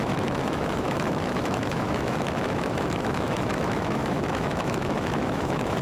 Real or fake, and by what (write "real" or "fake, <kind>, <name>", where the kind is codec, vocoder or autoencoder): fake, autoencoder, DAC-VAE